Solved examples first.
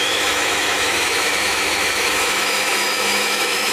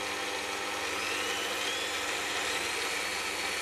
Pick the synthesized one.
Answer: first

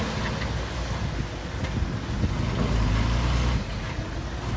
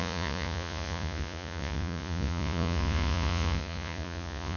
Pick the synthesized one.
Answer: second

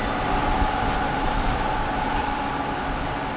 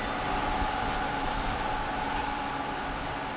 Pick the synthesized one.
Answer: first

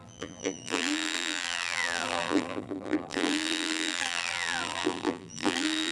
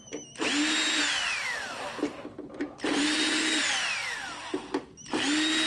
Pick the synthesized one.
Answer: first